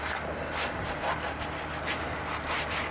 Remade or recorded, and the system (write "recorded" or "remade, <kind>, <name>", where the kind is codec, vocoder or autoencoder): recorded